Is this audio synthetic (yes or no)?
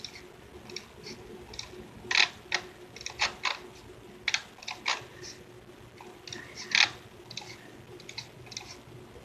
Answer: no